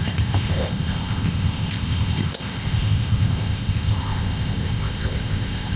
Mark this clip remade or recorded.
remade